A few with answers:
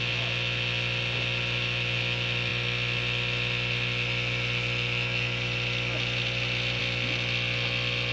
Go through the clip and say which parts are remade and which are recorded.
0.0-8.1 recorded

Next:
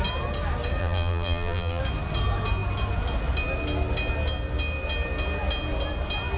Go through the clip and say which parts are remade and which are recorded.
0.0-0.8 recorded; 0.8-1.8 remade; 1.8-6.4 recorded

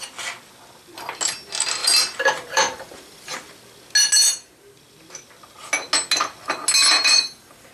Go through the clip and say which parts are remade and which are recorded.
0.0-1.8 recorded; 1.8-3.5 remade; 3.5-6.8 recorded; 6.8-7.7 remade

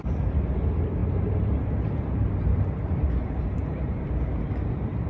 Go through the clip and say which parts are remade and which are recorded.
0.0-1.0 recorded; 1.0-4.1 remade; 4.1-5.1 recorded